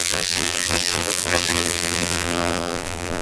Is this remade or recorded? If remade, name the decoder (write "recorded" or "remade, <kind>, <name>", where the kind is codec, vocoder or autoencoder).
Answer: remade, vocoder, BigVGAN v2